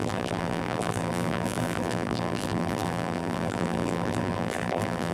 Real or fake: fake